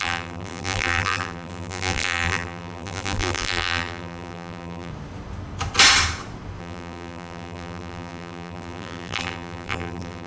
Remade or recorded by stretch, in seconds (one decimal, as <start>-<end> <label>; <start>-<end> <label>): 0.0-4.9 remade; 4.9-6.6 recorded; 6.6-10.3 remade